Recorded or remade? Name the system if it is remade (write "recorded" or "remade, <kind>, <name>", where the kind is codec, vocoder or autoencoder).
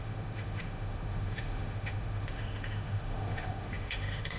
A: remade, autoencoder, DAC-VAE